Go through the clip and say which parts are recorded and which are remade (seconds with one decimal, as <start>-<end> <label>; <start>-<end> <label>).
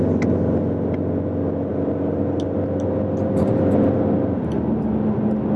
0.0-5.6 recorded